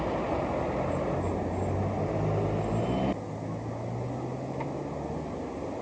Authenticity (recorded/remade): recorded